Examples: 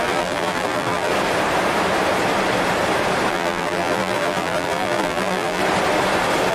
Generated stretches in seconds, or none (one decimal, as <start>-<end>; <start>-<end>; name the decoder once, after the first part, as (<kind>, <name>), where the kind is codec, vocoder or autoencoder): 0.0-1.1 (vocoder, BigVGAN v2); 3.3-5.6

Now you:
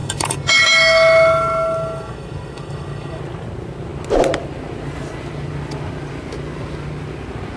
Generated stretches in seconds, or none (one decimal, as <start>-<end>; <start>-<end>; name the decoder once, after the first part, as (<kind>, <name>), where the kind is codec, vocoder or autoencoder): 0.0-3.2 (autoencoder, DAC-VAE)

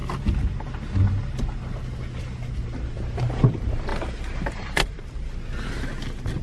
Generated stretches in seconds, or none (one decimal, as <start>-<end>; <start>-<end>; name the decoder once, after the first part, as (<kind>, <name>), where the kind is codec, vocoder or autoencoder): 3.9-5.1 (vocoder, BigVGAN v2)

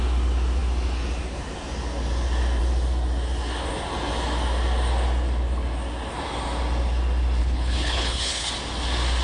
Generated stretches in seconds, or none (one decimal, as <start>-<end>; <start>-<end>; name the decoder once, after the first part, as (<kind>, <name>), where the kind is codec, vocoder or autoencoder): 7.4-8.5 (codec, HILCodec)

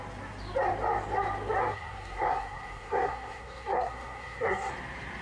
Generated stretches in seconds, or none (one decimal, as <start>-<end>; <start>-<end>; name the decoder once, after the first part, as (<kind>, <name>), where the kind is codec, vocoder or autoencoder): 1.6-4.7 (codec, SNAC)

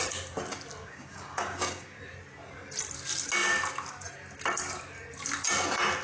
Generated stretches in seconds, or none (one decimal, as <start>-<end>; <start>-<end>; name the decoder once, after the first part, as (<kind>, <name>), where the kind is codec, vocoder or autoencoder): 0.8-2.0 (codec, DAC)

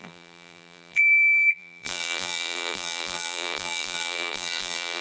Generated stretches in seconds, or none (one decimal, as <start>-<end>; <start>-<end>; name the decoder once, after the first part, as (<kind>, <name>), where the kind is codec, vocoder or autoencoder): 0.0-5.0 (vocoder, BigVGAN v2)

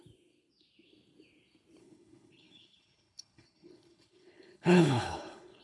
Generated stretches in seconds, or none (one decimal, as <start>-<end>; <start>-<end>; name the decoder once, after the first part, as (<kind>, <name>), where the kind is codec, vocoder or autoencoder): 1.8-5.6 (codec, HILCodec)